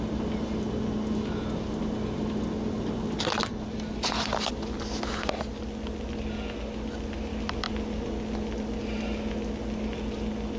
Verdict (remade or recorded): recorded